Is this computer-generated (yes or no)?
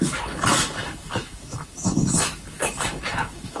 yes